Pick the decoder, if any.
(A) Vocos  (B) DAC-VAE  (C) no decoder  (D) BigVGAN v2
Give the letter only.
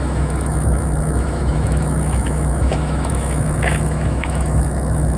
B